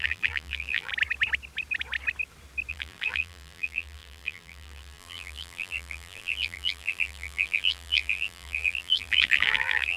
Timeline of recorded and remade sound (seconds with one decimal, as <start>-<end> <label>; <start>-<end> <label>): 0.0-0.9 remade; 0.9-2.7 recorded; 2.7-10.0 remade